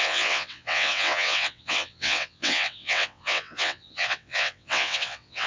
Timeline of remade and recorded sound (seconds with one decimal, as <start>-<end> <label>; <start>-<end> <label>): 0.0-5.5 remade